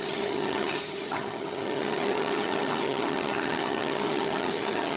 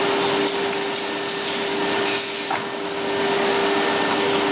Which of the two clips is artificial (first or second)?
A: first